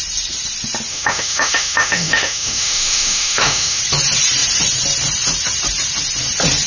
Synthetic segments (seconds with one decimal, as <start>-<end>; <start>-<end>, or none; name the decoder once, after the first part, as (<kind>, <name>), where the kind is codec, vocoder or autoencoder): 0.9-3.8 (autoencoder, DAC-VAE)